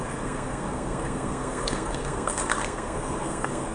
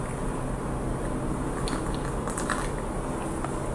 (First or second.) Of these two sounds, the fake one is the first